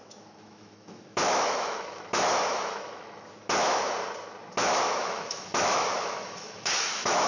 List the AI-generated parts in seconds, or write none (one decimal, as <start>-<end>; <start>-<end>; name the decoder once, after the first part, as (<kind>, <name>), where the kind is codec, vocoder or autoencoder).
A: 0.0-3.8 (autoencoder, DAC-VAE); 4.6-7.3